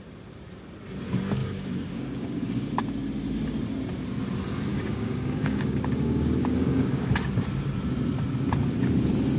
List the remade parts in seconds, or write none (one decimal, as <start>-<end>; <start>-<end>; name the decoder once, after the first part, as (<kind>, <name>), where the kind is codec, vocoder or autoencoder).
1.4-2.7 (codec, DAC); 4.7-7.1